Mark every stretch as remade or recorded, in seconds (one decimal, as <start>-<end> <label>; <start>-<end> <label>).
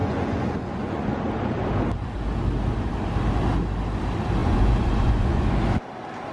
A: 0.0-1.2 remade; 1.2-4.4 recorded; 4.4-5.5 remade; 5.5-6.3 recorded